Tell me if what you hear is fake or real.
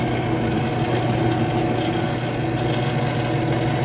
real